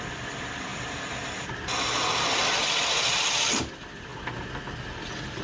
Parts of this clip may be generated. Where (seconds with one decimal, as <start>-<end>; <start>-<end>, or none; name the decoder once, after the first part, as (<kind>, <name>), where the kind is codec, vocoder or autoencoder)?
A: none